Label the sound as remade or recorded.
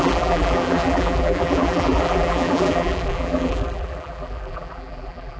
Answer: remade